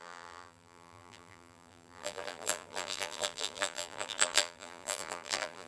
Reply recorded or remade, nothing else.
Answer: remade